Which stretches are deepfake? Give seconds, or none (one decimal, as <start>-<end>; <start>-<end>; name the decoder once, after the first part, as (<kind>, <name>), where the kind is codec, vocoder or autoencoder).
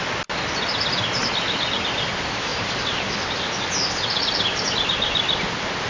none